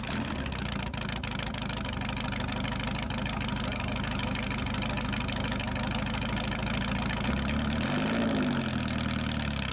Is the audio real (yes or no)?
yes